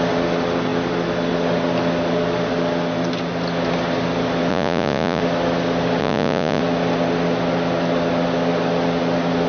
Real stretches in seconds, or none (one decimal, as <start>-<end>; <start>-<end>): 0.0-4.5; 5.2-6.0; 6.6-9.5

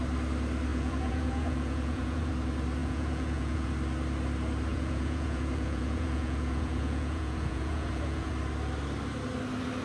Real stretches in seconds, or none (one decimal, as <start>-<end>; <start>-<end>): 0.0-0.7; 2.3-2.8; 3.7-4.7; 8.3-9.8